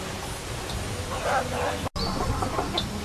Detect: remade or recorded recorded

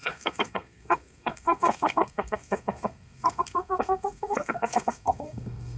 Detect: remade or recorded remade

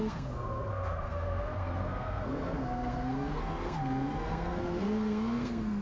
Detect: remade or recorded remade